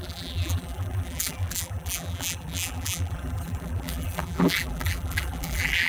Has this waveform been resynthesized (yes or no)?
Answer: yes